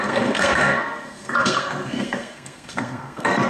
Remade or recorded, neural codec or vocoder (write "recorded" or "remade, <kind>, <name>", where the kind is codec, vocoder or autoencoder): remade, codec, SNAC